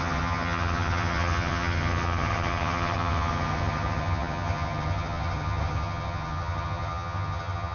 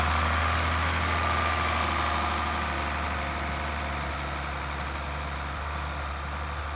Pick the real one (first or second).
second